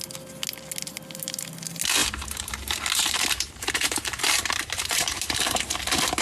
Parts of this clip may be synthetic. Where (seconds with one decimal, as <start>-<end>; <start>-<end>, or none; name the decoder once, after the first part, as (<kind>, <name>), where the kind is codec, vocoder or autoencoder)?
2.0-5.7 (vocoder, BigVGAN v2)